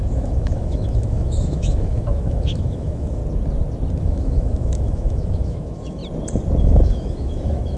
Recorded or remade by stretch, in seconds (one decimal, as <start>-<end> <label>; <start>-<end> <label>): 0.0-3.2 remade; 3.2-4.0 recorded; 4.0-6.0 remade; 6.0-6.6 recorded; 6.6-7.8 remade